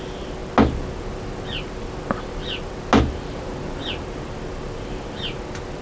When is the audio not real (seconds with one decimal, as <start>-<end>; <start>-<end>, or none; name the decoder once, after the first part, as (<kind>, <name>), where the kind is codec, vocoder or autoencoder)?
none